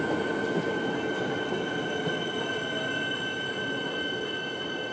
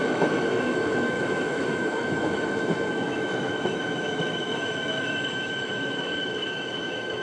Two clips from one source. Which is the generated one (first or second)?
second